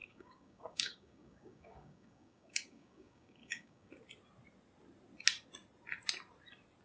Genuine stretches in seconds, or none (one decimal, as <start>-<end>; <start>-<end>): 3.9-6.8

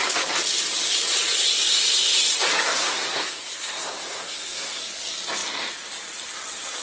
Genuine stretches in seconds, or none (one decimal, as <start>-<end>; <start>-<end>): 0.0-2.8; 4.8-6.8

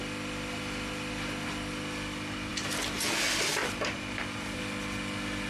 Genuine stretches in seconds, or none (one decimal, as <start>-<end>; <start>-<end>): 0.0-3.6; 4.6-5.5